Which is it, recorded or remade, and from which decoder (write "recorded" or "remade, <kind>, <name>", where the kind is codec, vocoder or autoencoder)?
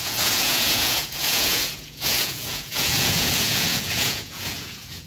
remade, vocoder, Vocos